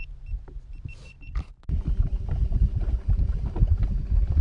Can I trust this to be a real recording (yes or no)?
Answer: yes